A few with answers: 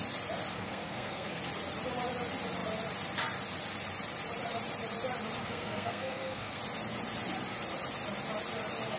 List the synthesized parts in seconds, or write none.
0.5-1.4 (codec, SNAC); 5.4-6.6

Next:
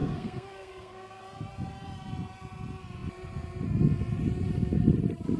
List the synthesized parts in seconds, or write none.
0.0-1.2 (codec, SNAC)

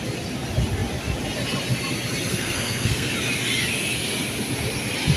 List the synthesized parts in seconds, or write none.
2.3-3.1 (codec, SNAC)

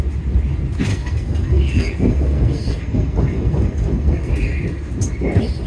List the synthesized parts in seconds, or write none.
0.9-4.3 (codec, SNAC)

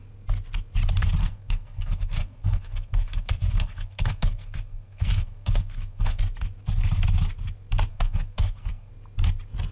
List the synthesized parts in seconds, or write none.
1.2-6.2 (codec, SNAC); 7.9-8.9

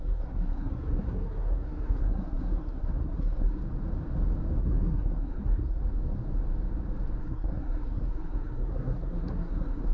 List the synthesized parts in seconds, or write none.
0.0-3.6 (codec, SNAC); 4.6-5.8; 7.2-9.9